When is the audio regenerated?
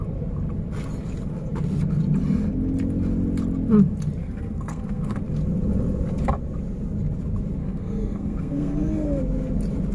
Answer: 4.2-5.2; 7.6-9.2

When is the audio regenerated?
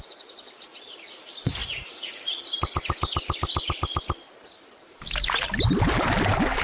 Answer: 1.6-2.4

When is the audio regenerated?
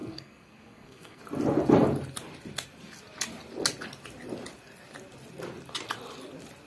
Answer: 0.0-1.2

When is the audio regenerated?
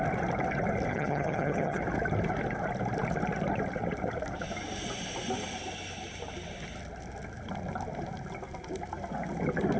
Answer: 0.9-1.8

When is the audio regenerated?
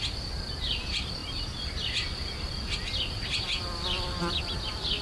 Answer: none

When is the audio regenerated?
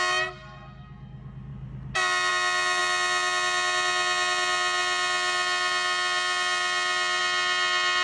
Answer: none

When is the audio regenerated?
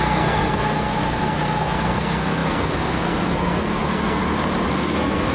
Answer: 0.0-4.2; 4.7-5.3